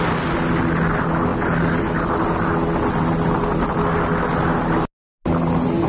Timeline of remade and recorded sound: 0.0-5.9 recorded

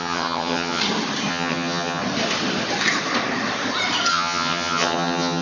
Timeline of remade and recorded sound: 0.0-0.8 remade; 0.8-1.3 recorded; 1.3-2.0 remade; 2.0-4.1 recorded; 4.1-5.4 remade

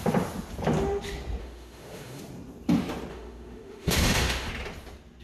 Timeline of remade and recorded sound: 0.0-1.4 recorded; 1.4-2.2 remade; 2.2-3.1 recorded; 3.1-4.5 remade; 4.5-5.2 recorded

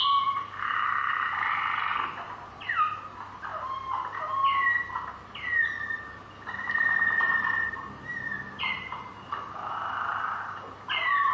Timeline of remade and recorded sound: 0.0-11.3 recorded